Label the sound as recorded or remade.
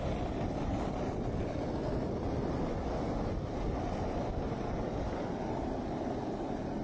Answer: recorded